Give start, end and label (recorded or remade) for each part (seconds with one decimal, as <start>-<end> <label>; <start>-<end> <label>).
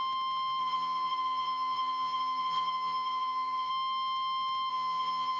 0.0-0.6 recorded; 0.6-3.7 remade; 3.7-4.7 recorded; 4.7-5.4 remade